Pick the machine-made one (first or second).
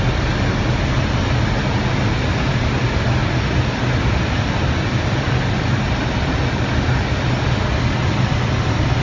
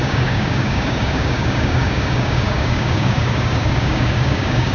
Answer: second